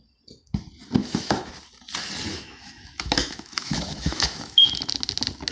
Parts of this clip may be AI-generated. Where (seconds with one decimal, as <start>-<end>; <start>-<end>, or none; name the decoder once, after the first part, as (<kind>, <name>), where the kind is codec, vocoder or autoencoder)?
1.0-1.5 (autoencoder, DAC-VAE); 2.3-4.9